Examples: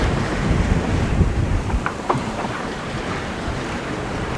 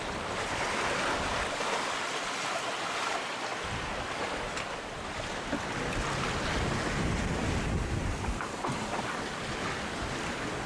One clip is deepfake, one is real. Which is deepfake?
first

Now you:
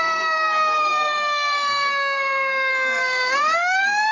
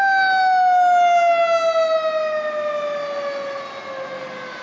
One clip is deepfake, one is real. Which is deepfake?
first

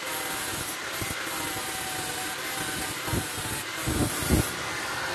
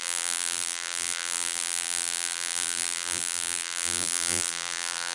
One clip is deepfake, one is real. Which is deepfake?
second